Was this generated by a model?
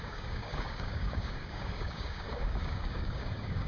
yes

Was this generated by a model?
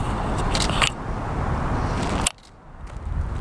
no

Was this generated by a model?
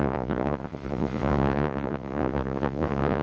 yes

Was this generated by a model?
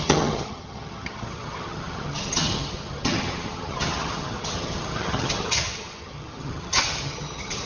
yes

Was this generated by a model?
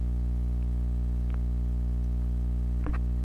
no